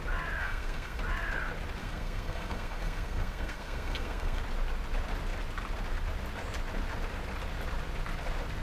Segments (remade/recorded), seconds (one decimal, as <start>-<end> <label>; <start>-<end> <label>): 0.0-0.4 recorded; 0.4-1.0 remade; 1.0-1.8 recorded; 1.8-4.4 remade; 4.4-8.6 recorded